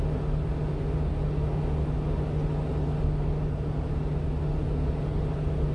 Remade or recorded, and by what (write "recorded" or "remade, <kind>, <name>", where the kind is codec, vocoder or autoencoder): recorded